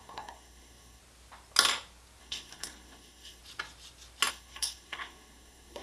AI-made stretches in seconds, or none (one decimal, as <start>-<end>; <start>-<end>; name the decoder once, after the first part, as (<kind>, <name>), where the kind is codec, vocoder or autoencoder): 0.0-1.0 (codec, SNAC); 2.2-3.4; 4.3-5.8